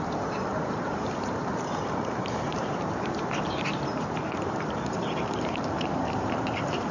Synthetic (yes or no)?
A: yes